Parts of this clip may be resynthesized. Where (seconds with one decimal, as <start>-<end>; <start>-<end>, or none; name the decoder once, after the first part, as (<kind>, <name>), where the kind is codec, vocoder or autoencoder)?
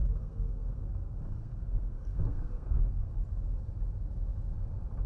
0.0-3.1 (codec, SNAC)